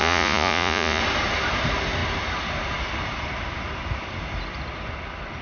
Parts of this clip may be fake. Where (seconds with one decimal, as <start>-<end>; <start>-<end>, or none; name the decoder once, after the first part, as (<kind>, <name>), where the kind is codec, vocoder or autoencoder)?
0.0-1.0 (vocoder, Vocos)